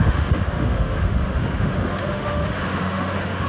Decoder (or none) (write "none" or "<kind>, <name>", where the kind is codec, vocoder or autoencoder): autoencoder, DAC-VAE